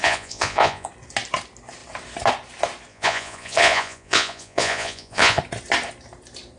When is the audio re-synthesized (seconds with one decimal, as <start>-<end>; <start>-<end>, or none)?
0.0-0.9; 2.9-5.4